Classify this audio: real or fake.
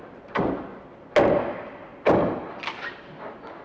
real